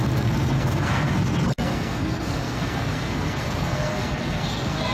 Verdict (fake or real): fake